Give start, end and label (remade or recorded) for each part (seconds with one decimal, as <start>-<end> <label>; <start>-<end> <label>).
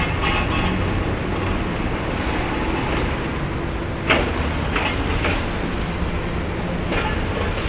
0.0-7.7 recorded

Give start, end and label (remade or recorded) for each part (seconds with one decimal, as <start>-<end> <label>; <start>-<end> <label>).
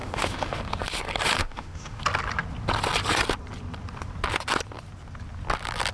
0.0-0.6 remade; 0.6-1.4 recorded; 1.4-2.0 remade; 2.0-5.9 recorded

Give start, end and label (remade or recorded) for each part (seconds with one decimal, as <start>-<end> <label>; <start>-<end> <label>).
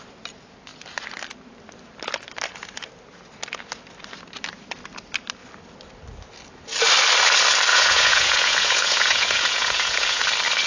0.0-7.7 recorded; 7.7-10.2 remade; 10.2-10.7 recorded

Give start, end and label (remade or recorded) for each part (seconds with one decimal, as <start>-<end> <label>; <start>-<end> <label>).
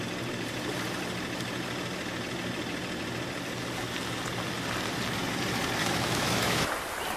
0.0-5.8 recorded; 5.8-6.7 remade; 6.7-7.2 recorded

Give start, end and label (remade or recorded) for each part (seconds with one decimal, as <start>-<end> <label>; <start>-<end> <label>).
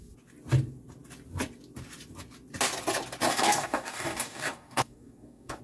0.0-3.3 recorded; 3.3-5.6 remade